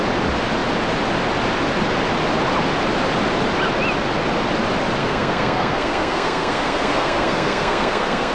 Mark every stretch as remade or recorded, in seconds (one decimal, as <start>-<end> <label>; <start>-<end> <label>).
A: 0.0-5.0 recorded; 5.0-8.3 remade

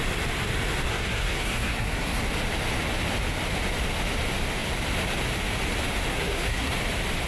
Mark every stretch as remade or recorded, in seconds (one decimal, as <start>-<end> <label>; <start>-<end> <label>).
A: 0.0-0.9 recorded; 0.9-2.3 remade; 2.3-6.1 recorded; 6.1-6.7 remade; 6.7-7.3 recorded

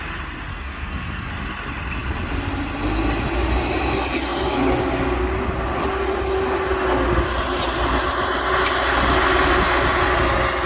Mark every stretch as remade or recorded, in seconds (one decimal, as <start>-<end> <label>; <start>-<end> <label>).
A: 0.0-0.5 recorded; 0.5-1.3 remade; 1.3-10.7 recorded

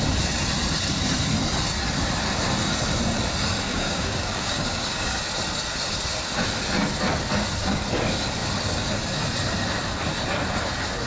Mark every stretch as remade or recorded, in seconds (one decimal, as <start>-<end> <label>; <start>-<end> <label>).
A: 0.0-3.7 recorded; 3.7-5.2 remade; 5.2-11.1 recorded

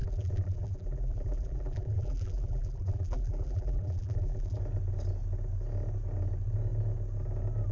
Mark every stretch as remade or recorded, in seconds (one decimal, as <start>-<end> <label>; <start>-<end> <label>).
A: 0.0-4.6 remade; 4.6-7.7 recorded